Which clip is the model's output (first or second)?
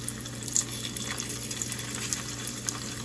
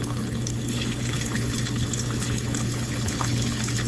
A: second